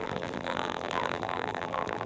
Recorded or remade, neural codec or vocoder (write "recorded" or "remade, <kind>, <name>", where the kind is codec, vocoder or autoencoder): remade, vocoder, BigVGAN v2